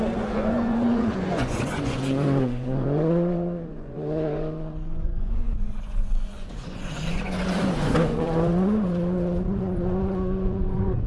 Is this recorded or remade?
remade